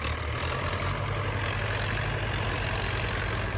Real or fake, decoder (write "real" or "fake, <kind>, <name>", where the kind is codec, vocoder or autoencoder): real